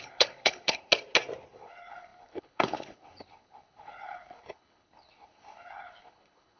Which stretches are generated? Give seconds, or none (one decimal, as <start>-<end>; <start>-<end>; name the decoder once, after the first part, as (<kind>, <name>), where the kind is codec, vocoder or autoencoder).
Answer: 0.0-0.9 (codec, HILCodec); 1.5-6.6